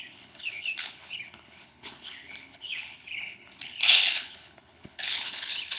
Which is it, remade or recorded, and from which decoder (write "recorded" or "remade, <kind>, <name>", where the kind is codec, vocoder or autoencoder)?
remade, codec, HILCodec